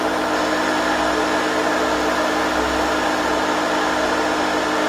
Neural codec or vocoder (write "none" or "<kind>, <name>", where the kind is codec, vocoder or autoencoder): none